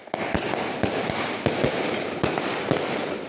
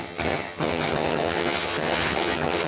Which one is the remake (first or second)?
second